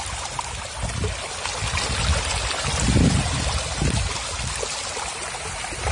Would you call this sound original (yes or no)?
yes